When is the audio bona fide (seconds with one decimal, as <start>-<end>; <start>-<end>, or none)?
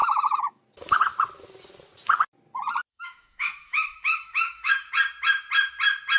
0.6-2.9; 4.9-6.2